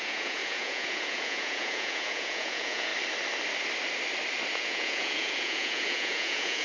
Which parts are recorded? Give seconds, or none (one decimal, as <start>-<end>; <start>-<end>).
2.9-4.5